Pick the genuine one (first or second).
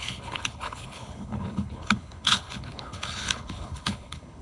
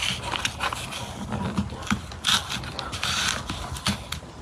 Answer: second